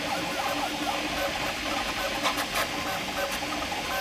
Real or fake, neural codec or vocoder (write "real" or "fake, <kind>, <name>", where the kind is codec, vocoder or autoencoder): real